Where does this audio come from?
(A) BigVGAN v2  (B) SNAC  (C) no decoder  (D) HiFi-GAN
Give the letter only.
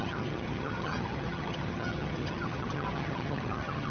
D